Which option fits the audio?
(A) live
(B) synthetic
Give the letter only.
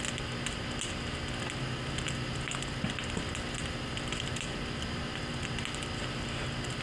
A